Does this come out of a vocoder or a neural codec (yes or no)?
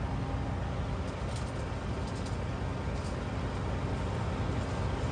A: no